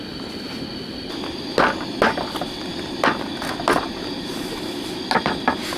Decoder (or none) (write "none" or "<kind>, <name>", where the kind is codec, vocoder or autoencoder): none